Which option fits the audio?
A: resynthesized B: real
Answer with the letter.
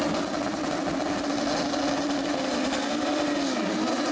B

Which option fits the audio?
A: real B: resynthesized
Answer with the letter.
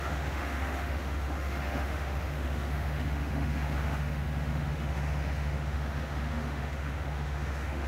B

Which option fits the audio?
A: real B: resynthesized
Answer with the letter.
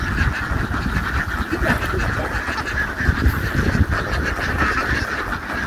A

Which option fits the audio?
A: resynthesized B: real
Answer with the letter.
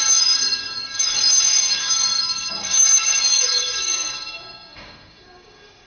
A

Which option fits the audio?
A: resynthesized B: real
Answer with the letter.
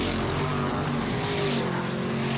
B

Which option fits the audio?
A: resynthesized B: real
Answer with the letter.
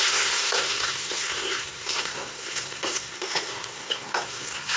A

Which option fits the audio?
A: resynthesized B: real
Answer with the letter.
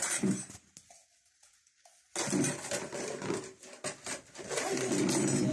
B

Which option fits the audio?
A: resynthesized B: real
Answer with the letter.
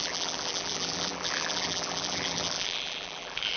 A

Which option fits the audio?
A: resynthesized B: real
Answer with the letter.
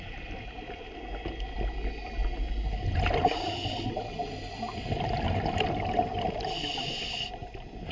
B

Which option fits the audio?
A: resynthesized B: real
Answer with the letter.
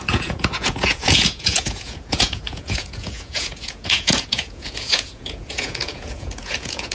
A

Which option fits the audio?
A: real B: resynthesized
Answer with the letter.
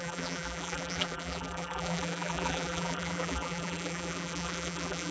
B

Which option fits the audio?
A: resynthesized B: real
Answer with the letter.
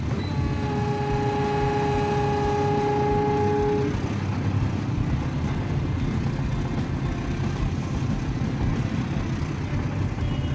B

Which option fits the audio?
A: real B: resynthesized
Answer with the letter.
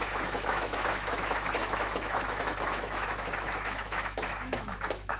B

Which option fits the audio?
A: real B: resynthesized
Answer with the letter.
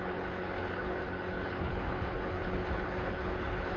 B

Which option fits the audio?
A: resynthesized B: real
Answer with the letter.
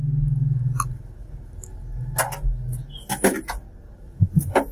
B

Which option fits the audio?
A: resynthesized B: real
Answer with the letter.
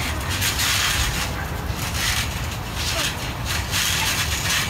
B